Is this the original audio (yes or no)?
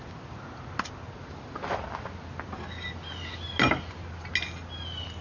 yes